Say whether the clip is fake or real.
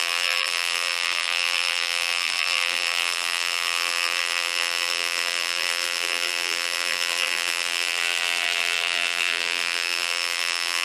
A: fake